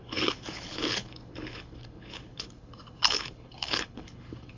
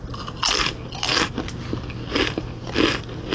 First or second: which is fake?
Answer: first